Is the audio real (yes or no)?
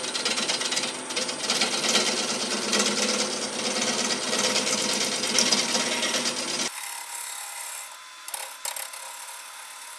yes